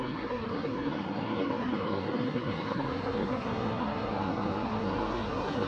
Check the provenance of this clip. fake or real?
fake